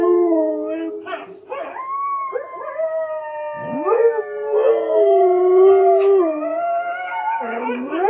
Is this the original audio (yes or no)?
yes